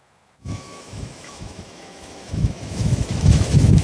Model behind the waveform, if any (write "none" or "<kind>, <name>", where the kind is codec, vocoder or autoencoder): autoencoder, DAC-VAE